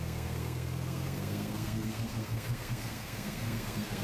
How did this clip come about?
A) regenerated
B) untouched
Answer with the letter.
A